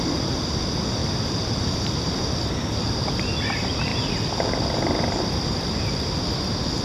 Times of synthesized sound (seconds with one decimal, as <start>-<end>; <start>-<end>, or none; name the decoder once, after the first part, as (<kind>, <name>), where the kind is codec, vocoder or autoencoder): 1.0-2.2 (vocoder, BigVGAN v2)